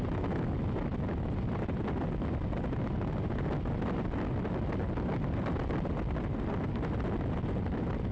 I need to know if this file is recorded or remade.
recorded